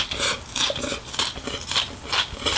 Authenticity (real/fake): real